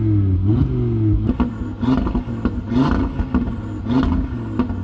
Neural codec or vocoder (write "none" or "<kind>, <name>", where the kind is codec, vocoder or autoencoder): none